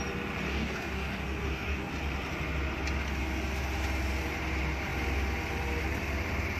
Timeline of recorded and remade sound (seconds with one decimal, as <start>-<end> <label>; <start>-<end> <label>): 0.0-0.5 recorded; 0.5-1.9 remade; 1.9-6.6 recorded